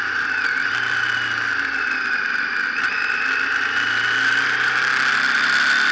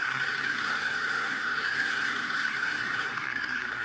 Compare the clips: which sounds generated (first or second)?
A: second